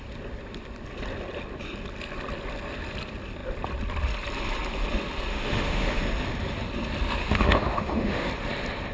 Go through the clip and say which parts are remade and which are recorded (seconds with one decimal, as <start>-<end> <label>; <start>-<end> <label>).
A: 0.0-5.3 recorded; 5.3-6.0 remade; 6.0-7.2 recorded; 7.2-8.3 remade; 8.3-8.9 recorded

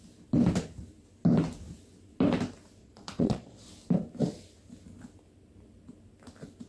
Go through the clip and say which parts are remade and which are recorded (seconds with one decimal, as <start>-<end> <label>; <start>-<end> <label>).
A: 0.0-2.8 recorded; 2.8-3.7 remade; 3.7-6.7 recorded